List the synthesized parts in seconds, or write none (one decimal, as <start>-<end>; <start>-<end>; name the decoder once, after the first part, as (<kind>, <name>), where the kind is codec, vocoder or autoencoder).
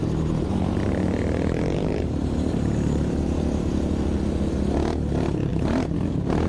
0.0-3.9 (vocoder, BigVGAN v2); 5.5-6.5